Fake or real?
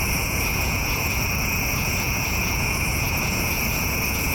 fake